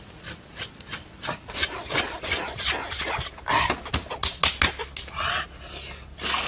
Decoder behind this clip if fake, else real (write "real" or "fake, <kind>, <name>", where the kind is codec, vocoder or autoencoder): real